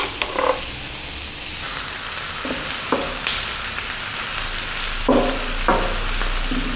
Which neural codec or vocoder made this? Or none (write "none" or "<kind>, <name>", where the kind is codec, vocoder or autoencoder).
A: none